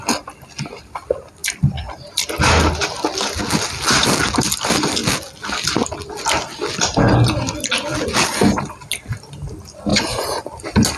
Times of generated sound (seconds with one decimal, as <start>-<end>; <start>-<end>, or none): none